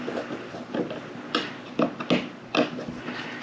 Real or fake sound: real